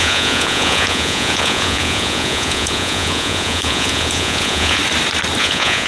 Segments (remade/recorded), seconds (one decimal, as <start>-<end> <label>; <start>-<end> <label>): 0.0-4.8 remade; 4.8-5.4 recorded; 5.4-5.9 remade